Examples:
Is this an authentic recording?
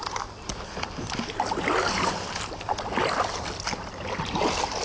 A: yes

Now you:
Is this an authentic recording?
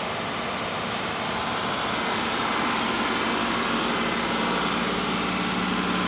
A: yes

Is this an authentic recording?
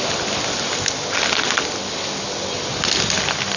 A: yes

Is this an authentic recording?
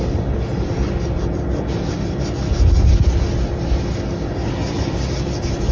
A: yes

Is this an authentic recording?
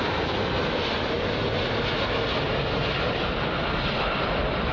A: yes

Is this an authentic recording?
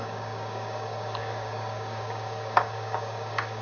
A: no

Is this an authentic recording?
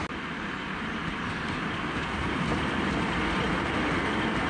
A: yes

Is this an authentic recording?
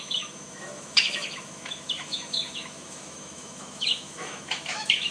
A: no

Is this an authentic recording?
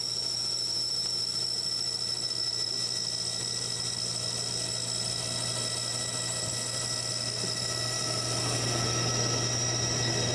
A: yes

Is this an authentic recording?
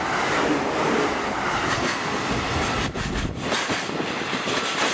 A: yes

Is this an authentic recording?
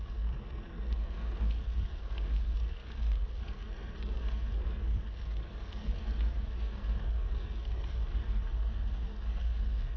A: no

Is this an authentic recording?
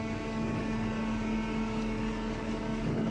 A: no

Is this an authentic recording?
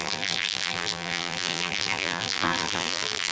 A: no